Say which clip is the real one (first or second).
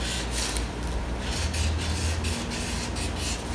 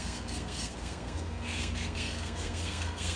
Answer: first